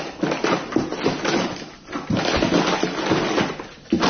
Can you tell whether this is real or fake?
real